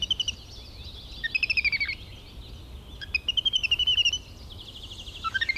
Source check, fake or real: real